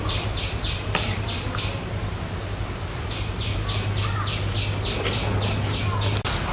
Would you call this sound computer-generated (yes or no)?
no